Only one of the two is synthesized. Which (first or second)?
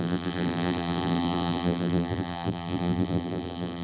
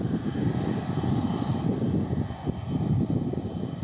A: first